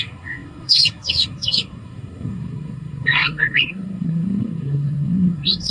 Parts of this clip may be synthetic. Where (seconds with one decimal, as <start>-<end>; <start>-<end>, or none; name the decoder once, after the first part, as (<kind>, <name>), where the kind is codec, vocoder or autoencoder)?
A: 0.0-5.7 (codec, SNAC)